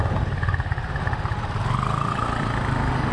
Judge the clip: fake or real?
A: real